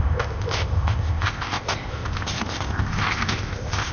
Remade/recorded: remade